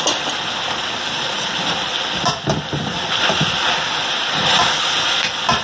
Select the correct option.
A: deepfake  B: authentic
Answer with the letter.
B